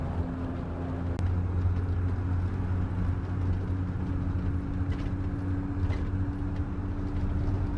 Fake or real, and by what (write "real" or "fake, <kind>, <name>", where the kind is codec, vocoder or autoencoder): real